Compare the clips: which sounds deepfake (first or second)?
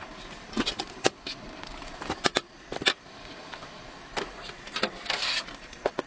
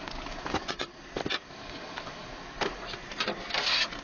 first